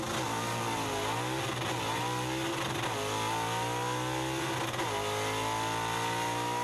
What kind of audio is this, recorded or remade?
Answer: recorded